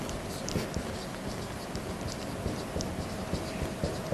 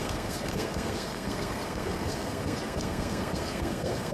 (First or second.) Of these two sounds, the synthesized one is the second